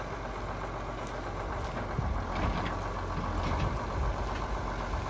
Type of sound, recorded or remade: recorded